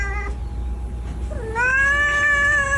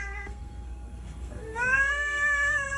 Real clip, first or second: first